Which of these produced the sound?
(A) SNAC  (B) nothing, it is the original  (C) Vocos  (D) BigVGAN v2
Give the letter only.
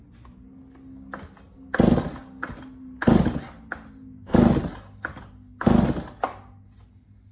B